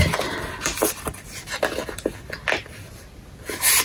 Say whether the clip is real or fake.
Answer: real